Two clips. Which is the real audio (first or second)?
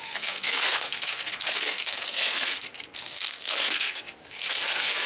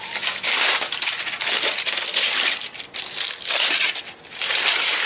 second